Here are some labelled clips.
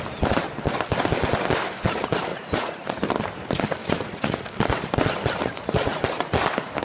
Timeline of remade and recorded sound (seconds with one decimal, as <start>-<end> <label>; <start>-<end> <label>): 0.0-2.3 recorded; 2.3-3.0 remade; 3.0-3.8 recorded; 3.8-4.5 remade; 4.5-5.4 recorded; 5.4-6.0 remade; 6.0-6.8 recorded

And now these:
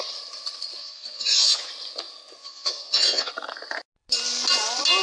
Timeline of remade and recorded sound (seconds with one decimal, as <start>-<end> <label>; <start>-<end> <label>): 0.0-0.8 recorded; 0.8-1.7 remade; 1.7-2.4 recorded; 2.4-3.3 remade; 3.3-5.0 recorded

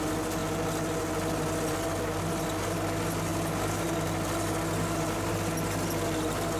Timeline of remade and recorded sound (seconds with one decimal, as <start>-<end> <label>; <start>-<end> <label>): 0.0-6.6 recorded